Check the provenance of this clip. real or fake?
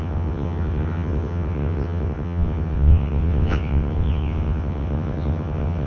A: fake